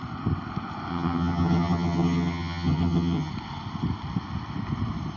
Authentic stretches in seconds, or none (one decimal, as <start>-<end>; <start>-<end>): 0.0-0.9; 3.3-5.2